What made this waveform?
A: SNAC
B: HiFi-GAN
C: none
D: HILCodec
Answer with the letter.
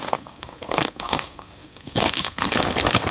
A